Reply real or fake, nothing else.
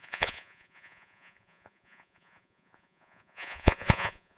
fake